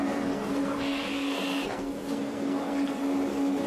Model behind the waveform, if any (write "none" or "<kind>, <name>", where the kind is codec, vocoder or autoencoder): codec, SNAC